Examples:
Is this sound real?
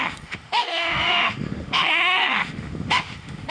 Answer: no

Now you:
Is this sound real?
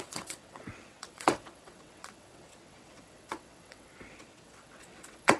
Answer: no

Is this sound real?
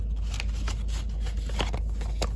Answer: yes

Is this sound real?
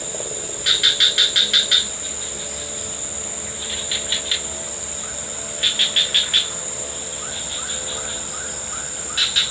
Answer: yes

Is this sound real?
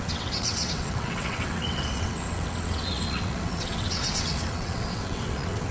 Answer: no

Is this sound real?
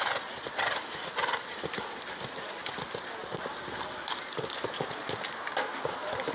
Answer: yes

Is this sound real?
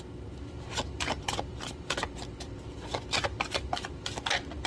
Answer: yes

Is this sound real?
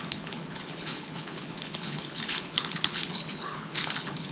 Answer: no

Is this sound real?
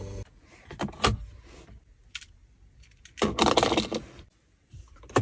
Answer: yes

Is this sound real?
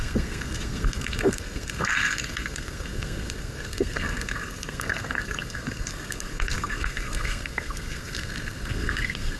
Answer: no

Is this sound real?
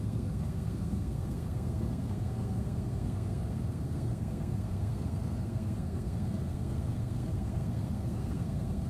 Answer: no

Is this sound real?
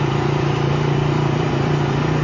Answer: no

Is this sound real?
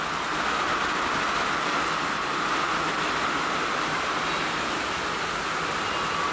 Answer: yes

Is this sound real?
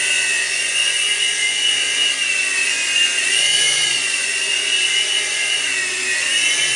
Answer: no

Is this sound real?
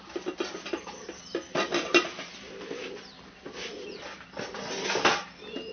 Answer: yes